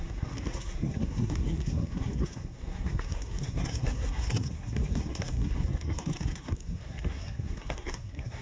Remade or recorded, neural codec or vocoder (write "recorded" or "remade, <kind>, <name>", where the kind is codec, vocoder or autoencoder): remade, codec, SNAC